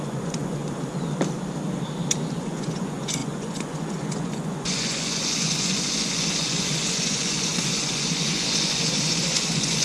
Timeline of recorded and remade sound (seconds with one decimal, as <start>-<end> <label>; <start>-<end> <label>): 0.0-0.6 remade; 0.6-2.4 recorded; 2.4-9.8 remade

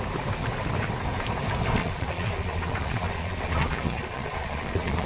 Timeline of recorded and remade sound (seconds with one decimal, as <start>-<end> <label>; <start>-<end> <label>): 0.0-1.8 recorded; 1.8-5.1 remade

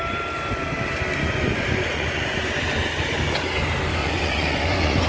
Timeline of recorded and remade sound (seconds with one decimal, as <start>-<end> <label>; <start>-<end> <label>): 0.0-1.1 recorded; 1.1-2.5 remade; 2.5-4.0 recorded; 4.0-5.1 remade

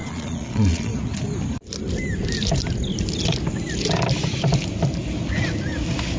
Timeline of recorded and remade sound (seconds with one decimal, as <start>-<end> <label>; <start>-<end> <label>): 0.0-0.9 remade; 0.9-6.2 recorded